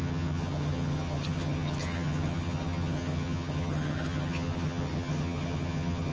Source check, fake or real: fake